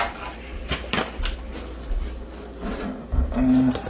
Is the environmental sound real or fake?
real